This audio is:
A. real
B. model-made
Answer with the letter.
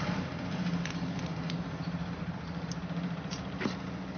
B